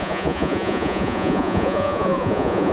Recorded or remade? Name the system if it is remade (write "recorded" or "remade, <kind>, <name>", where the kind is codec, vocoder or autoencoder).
remade, vocoder, Vocos